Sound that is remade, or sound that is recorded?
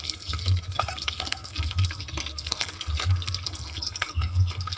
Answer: remade